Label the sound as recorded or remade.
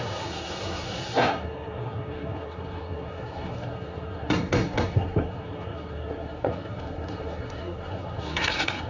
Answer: remade